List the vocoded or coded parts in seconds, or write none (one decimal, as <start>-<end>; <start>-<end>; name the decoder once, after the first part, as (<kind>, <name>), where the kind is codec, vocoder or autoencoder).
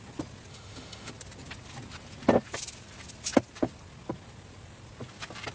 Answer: 0.5-1.1 (autoencoder, DAC-VAE)